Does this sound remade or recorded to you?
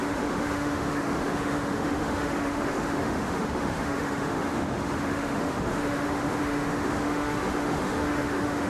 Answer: remade